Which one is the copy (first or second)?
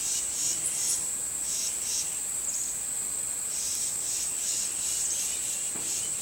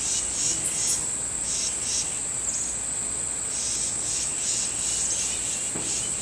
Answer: first